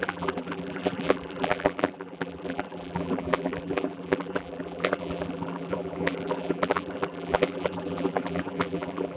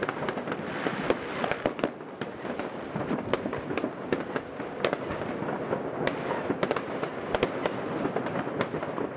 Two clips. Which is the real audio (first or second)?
second